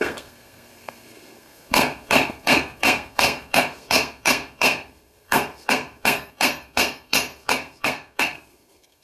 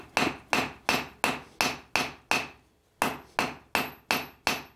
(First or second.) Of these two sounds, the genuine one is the second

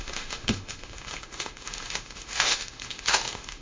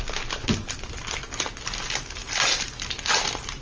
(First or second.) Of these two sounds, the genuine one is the second